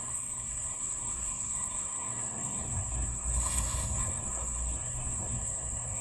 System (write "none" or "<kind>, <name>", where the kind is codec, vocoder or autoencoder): codec, SNAC